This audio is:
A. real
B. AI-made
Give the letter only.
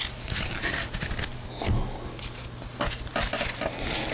A